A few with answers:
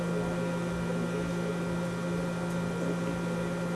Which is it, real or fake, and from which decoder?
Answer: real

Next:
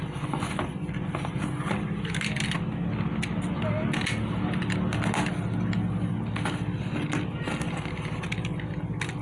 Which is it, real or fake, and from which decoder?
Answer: real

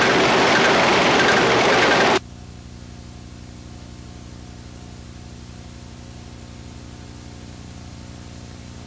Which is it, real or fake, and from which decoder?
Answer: real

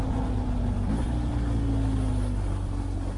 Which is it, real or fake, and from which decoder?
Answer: real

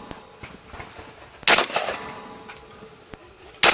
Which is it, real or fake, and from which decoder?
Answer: real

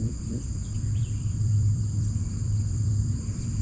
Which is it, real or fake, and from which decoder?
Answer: fake, vocoder, BigVGAN v2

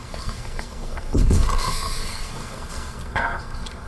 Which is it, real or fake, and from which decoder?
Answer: fake, codec, SNAC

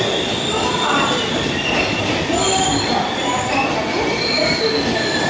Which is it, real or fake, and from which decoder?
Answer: real